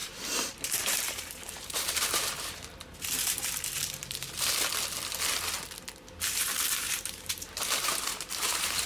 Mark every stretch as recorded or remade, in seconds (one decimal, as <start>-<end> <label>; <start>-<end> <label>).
0.0-2.5 remade; 2.5-6.8 recorded; 6.8-8.9 remade